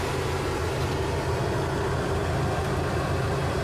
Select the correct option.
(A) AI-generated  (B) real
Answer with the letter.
B